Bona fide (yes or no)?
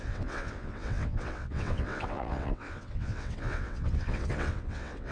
no